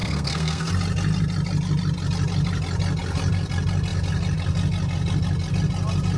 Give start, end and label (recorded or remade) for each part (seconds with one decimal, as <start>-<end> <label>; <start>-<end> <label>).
0.0-0.7 remade; 0.7-6.2 recorded